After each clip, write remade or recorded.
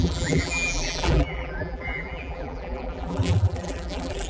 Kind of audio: remade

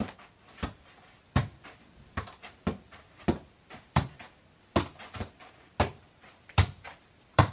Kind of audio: remade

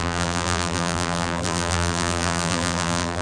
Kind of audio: remade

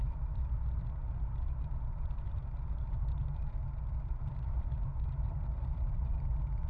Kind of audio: remade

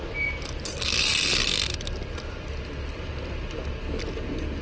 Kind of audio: recorded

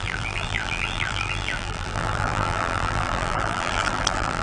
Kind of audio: remade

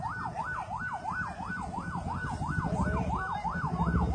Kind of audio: recorded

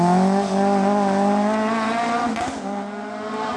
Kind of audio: recorded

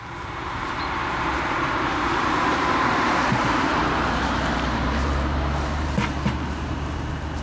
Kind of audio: remade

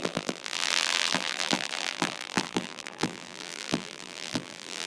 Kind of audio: remade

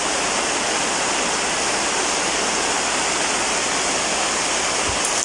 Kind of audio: remade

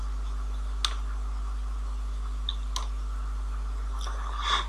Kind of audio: recorded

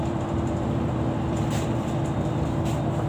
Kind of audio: remade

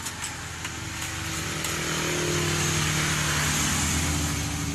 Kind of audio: recorded